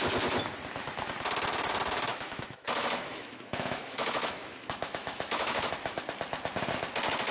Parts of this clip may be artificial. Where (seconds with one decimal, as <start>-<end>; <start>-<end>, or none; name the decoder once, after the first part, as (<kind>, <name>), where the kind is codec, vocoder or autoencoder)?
2.1-6.0 (autoencoder, DAC-VAE)